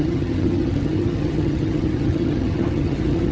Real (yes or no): no